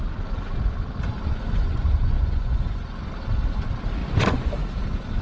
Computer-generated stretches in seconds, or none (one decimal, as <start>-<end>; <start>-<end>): 1.1-3.0; 4.0-4.5